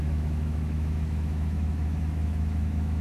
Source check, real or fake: fake